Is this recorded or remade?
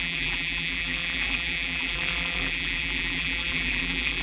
remade